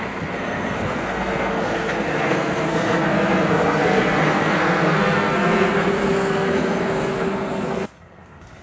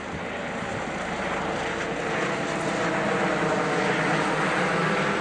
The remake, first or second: first